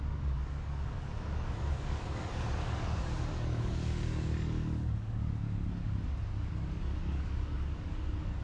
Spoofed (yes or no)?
yes